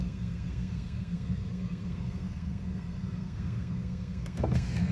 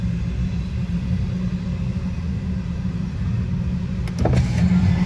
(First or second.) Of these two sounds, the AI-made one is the first